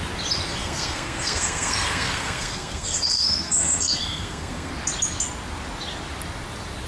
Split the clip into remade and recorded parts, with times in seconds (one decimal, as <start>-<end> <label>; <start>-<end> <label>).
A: 0.0-0.6 recorded; 0.6-4.7 remade; 4.7-6.9 recorded

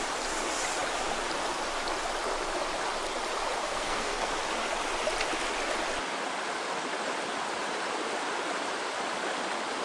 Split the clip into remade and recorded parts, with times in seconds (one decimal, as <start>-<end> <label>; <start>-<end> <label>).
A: 0.0-3.6 recorded; 3.6-4.3 remade; 4.3-9.8 recorded

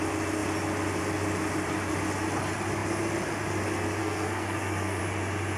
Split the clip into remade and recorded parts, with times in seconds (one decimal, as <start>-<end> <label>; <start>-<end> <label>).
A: 0.0-4.0 recorded; 4.0-5.0 remade; 5.0-5.6 recorded